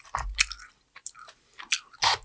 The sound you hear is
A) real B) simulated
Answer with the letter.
A